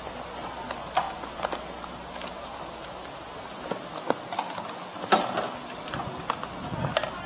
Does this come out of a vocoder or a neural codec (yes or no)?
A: no